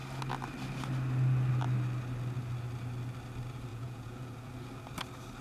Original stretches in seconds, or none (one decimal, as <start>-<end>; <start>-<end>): 0.0-3.7; 4.5-5.4